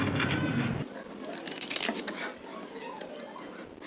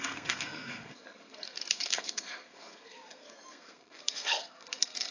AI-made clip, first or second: second